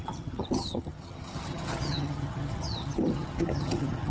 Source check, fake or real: fake